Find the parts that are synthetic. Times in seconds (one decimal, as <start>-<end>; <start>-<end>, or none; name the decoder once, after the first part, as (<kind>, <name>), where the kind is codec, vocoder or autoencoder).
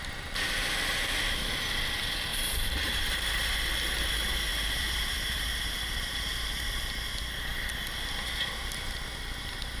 2.3-3.2 (vocoder, BigVGAN v2); 4.5-6.7